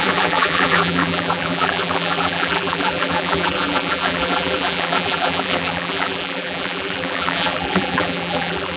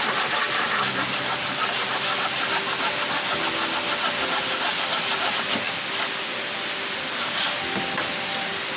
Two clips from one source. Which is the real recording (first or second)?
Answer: second